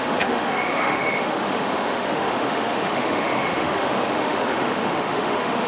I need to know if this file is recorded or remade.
remade